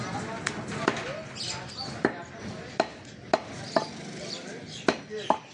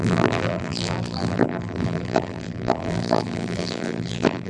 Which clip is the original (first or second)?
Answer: first